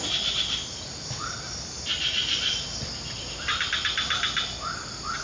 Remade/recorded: recorded